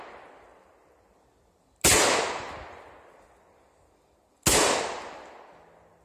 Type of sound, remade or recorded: recorded